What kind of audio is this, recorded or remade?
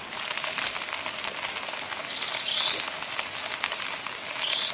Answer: recorded